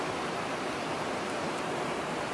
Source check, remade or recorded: remade